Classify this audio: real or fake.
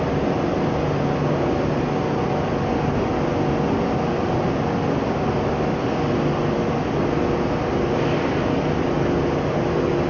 real